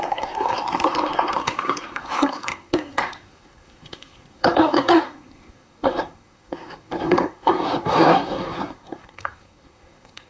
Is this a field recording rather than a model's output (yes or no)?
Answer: no